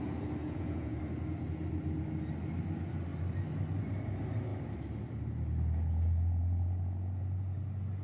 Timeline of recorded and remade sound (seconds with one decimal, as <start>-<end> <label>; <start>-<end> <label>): 0.0-0.4 recorded; 0.4-1.0 remade; 1.0-8.0 recorded